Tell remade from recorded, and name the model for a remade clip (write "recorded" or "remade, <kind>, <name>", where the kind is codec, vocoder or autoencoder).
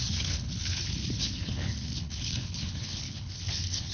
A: remade, codec, HILCodec